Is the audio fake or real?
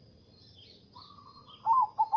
real